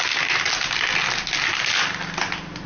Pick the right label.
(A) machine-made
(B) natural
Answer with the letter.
B